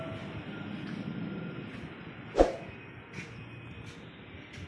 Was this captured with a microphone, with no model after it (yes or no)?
yes